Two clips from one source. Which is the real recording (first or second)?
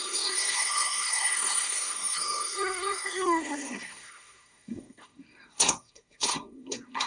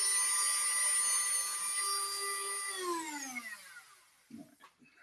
second